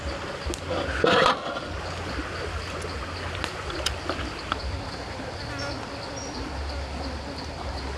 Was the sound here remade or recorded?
recorded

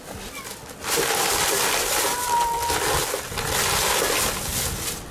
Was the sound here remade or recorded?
recorded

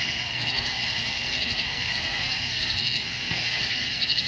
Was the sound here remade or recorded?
remade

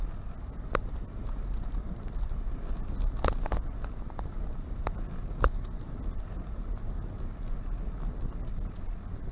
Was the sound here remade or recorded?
recorded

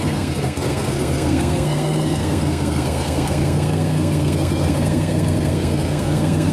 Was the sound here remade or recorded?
remade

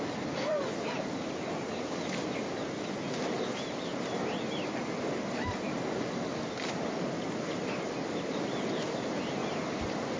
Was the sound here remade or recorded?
recorded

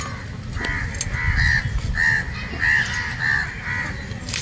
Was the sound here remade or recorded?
recorded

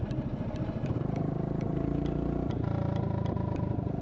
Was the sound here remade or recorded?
recorded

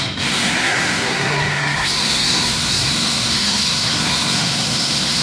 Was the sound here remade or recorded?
remade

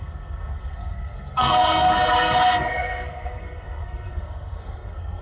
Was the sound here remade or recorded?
remade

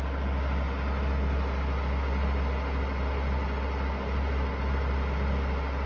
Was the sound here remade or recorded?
recorded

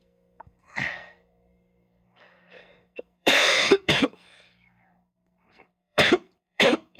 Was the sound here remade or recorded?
remade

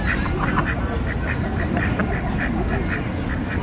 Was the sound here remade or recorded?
recorded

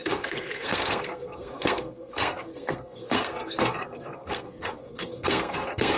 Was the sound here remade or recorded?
remade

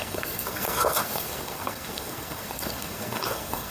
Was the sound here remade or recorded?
remade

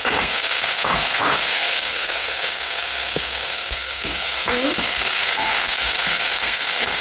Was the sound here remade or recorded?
remade